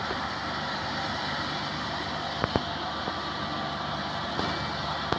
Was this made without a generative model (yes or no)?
yes